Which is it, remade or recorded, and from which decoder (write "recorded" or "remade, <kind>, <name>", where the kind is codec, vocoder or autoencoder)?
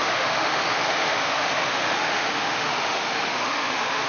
remade, autoencoder, DAC-VAE